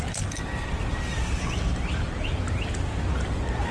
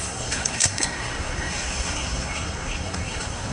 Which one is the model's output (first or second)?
second